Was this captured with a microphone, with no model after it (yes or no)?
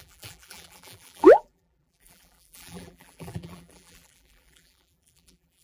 no